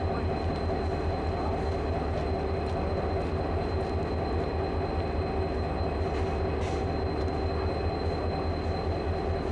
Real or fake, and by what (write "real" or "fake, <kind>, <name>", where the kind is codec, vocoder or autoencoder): real